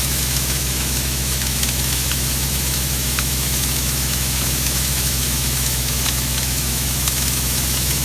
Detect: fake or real fake